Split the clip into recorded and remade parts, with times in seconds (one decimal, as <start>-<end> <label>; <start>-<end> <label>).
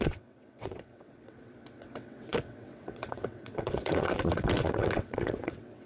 0.0-5.9 remade